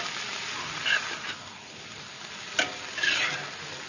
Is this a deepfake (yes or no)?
no